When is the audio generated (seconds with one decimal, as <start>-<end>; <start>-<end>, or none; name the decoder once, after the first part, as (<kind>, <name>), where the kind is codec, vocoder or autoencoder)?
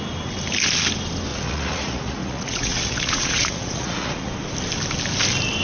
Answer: 1.3-4.3 (vocoder, Vocos)